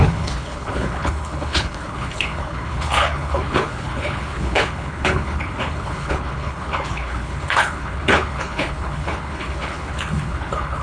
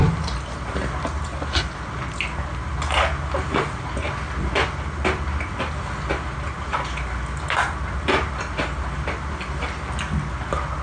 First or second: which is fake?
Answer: first